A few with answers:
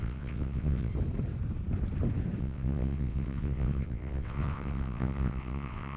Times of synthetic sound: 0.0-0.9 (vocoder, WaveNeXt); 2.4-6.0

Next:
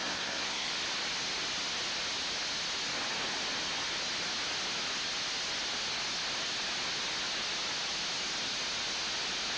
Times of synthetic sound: 0.0-0.7 (codec, SNAC)

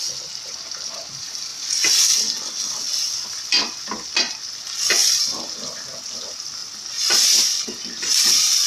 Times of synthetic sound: 5.0-5.7 (vocoder, BigVGAN v2)

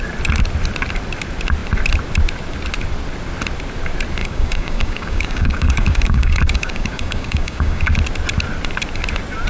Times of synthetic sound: 4.2-7.9 (codec, DAC)

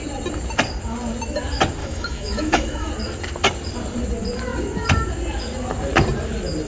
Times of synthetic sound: 1.8-2.9 (autoencoder, DAC-VAE)

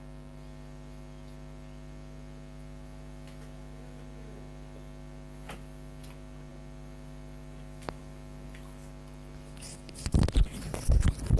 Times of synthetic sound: none

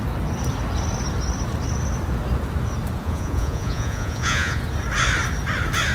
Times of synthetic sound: 3.0-4.6 (vocoder, Vocos)

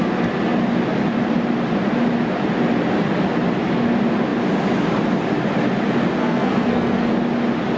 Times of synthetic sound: 6.2-7.1 (codec, SNAC)